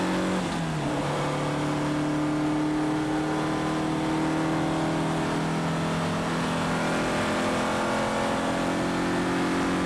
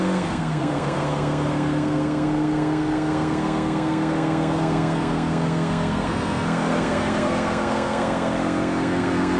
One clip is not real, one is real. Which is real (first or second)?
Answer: first